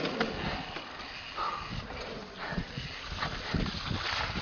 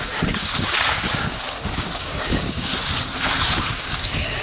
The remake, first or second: second